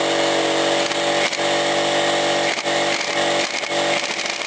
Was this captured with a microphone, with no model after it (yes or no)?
yes